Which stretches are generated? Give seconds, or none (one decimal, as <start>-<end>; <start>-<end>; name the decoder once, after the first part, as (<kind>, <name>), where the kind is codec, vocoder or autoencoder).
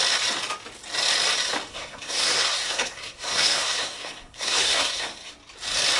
1.7-5.3 (codec, SNAC)